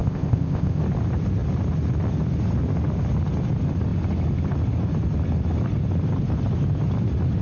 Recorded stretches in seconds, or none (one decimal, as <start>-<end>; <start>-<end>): 0.8-7.4